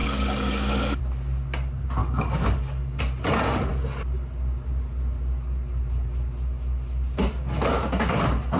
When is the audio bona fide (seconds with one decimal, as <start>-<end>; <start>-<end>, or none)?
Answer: 1.0-2.0; 3.0-8.6